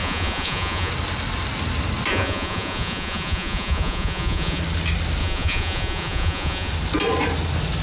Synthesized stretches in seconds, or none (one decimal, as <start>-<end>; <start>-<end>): 0.0-0.9; 2.1-4.6; 5.2-6.7